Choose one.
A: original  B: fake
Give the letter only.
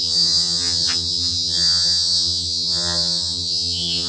B